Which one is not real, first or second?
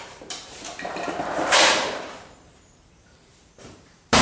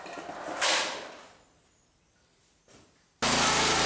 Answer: first